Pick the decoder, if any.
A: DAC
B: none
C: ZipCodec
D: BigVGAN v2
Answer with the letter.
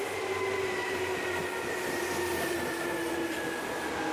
B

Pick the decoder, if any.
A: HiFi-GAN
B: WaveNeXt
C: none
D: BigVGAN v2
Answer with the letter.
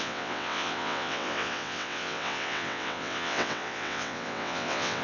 B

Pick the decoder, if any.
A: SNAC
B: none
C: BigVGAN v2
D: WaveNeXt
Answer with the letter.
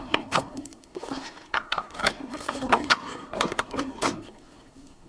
A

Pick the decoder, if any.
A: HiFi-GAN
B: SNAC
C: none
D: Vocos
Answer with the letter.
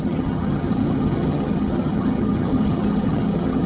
A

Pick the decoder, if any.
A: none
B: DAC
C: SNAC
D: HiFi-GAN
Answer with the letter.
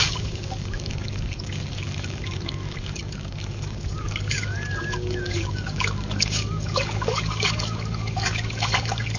B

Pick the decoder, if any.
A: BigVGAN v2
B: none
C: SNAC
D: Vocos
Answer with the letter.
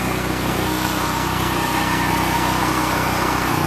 C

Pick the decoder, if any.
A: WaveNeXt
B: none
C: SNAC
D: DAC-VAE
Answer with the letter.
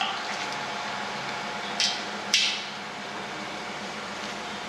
B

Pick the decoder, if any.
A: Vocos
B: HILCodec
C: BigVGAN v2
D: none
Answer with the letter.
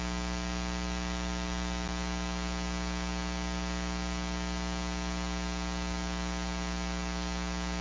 D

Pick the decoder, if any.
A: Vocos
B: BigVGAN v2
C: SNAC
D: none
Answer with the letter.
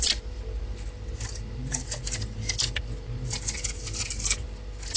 D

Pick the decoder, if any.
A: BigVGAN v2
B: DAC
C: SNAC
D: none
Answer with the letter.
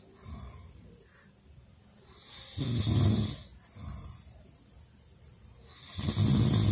D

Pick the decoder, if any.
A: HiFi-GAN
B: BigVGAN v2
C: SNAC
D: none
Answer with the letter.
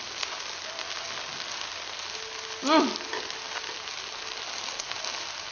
D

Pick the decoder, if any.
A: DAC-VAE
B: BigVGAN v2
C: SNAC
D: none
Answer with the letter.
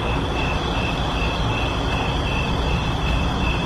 D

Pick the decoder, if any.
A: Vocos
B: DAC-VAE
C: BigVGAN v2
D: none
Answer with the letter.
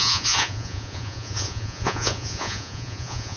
A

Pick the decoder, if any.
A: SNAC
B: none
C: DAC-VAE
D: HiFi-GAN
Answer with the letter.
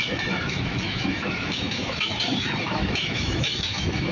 C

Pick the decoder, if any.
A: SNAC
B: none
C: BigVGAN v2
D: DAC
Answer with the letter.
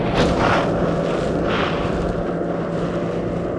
B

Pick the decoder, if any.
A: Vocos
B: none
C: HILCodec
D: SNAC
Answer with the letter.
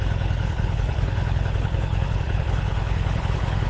C